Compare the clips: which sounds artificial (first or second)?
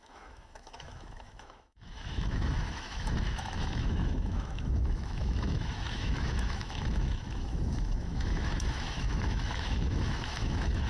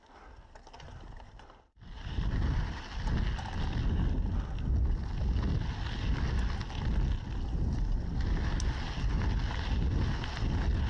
first